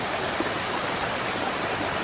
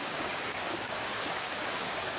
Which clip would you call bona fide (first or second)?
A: first